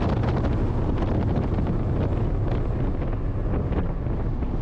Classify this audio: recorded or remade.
recorded